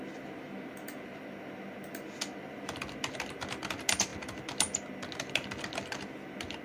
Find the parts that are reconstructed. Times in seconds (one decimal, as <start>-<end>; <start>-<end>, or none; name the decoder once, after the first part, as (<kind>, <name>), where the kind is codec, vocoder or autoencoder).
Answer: none